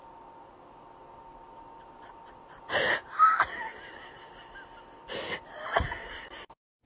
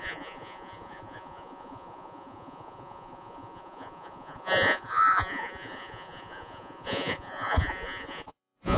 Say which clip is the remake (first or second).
second